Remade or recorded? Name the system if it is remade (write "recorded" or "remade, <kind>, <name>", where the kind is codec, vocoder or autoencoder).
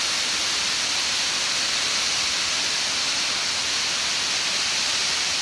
recorded